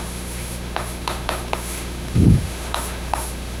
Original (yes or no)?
no